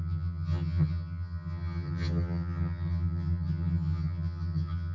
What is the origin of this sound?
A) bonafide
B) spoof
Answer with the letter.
B